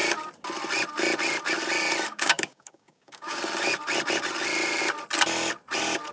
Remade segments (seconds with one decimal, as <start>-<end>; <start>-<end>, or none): 2.1-3.4